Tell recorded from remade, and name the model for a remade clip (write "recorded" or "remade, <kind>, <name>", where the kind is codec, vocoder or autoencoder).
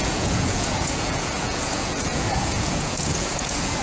remade, vocoder, Vocos